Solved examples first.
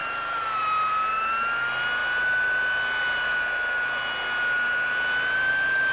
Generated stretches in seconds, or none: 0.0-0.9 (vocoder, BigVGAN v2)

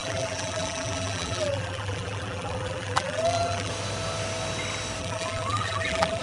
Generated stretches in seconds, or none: 0.0-3.7 (vocoder, BigVGAN v2); 5.0-6.2

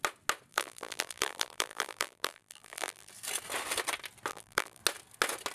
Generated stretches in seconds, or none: 0.5-3.1 (vocoder, BigVGAN v2); 4.3-4.8

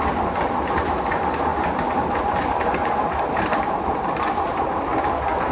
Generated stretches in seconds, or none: 1.5-4.8 (vocoder, BigVGAN v2)